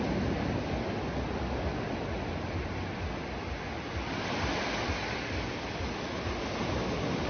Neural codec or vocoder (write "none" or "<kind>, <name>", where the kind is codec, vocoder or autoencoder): none